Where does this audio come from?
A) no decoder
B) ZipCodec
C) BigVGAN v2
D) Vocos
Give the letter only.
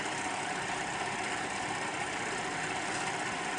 A